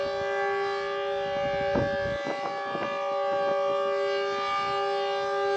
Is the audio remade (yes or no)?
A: no